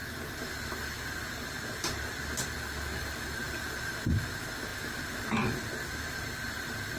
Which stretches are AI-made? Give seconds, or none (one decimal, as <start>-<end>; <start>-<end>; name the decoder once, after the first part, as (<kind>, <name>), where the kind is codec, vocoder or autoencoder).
0.0-4.2 (vocoder, BigVGAN v2); 4.7-6.2